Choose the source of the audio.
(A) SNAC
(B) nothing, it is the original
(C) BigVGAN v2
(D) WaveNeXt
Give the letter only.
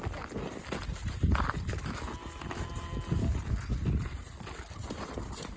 B